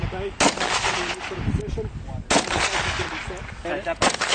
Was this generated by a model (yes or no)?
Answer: no